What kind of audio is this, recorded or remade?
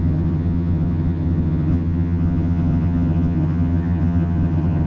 remade